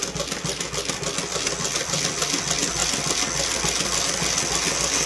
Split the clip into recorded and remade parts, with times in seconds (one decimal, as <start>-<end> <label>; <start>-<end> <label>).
0.0-5.1 recorded